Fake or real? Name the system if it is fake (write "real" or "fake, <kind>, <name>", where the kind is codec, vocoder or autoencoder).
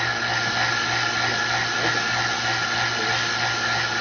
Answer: real